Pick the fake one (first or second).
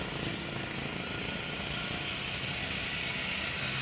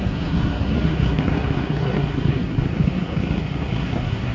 second